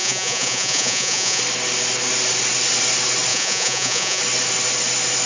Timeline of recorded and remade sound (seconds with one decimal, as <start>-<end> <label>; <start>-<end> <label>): 0.0-1.4 remade; 1.4-3.3 recorded; 3.3-4.2 remade; 4.2-5.3 recorded